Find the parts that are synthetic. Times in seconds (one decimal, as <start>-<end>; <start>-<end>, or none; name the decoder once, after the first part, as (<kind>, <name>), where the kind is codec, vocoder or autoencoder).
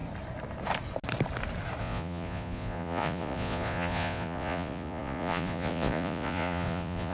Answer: 1.8-7.1 (vocoder, Vocos)